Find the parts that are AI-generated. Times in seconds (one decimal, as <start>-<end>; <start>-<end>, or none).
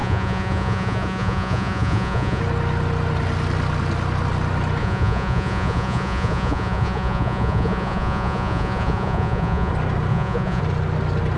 0.0-2.4; 4.8-9.7; 10.1-10.6